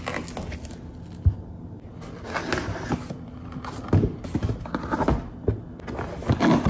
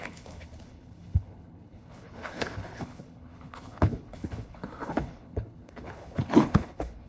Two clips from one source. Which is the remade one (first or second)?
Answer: second